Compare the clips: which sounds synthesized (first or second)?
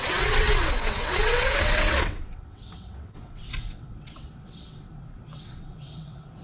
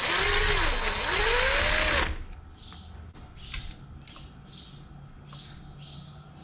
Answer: first